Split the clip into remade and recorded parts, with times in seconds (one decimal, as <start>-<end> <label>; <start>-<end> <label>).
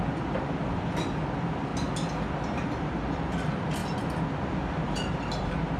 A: 0.0-1.7 remade; 1.7-2.3 recorded; 2.3-3.8 remade; 3.8-4.8 recorded; 4.8-5.8 remade